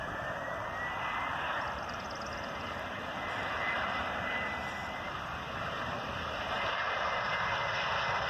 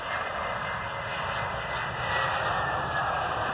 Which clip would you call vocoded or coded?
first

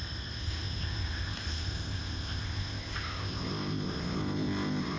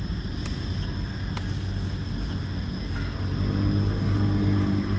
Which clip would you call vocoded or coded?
first